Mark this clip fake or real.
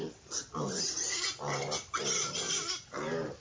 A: real